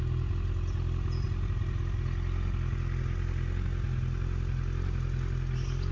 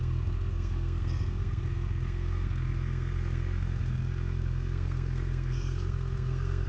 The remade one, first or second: second